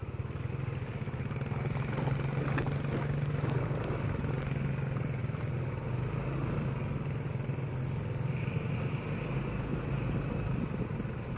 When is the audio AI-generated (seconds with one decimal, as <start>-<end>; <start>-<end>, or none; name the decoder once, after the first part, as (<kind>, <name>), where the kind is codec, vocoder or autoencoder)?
none